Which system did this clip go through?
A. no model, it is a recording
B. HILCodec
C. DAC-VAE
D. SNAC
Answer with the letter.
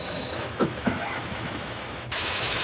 C